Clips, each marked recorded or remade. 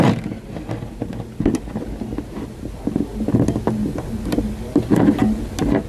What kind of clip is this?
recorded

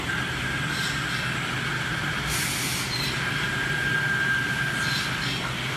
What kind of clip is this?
recorded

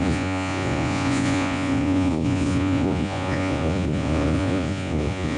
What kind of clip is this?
remade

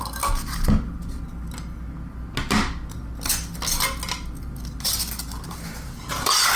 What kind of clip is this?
recorded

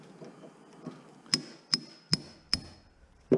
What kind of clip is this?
recorded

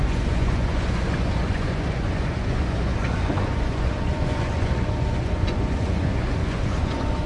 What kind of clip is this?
remade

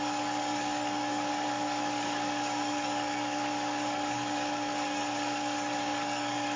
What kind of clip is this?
remade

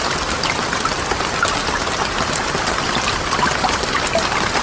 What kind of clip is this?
recorded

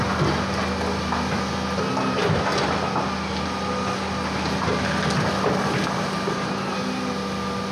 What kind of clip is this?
recorded